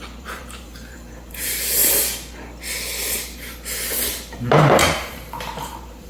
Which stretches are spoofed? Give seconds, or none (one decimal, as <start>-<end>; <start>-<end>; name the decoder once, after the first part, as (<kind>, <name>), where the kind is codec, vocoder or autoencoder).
0.0-1.8 (vocoder, BigVGAN v2); 4.5-6.1